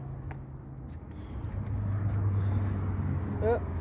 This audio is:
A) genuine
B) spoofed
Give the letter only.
A